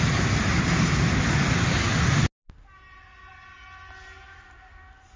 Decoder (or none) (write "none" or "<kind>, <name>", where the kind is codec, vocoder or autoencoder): none